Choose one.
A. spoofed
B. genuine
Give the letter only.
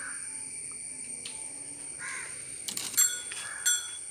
B